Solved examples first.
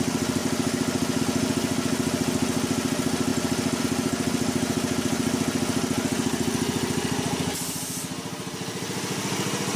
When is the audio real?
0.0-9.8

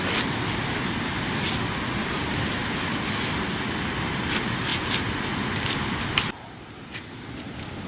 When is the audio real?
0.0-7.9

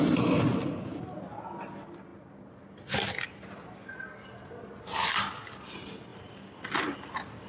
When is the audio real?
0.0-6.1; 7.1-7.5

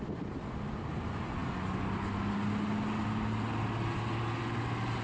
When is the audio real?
0.0-5.0